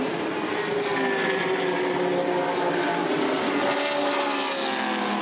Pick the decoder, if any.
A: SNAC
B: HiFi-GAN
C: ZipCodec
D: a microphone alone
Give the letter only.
D